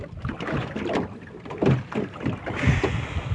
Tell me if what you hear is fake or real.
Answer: real